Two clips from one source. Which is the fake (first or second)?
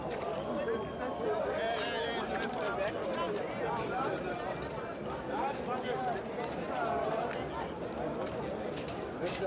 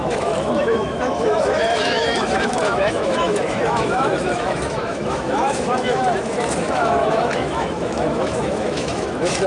second